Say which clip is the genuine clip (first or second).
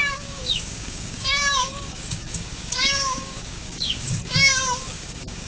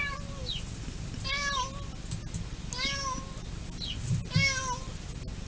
second